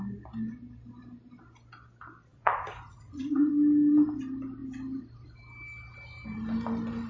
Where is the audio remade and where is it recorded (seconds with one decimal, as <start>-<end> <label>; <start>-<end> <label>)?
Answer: 0.0-2.3 recorded; 2.3-3.5 remade; 3.5-7.1 recorded